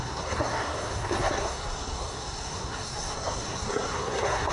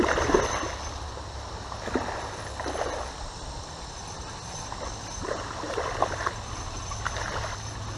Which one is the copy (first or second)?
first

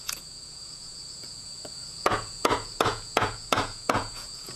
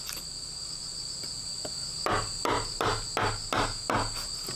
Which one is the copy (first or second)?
first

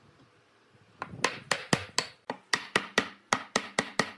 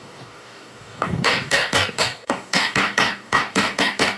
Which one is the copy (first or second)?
second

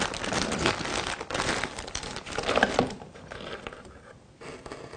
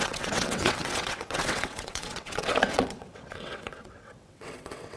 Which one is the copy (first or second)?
second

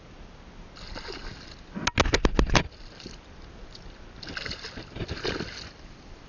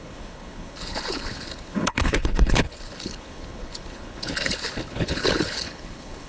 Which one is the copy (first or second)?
second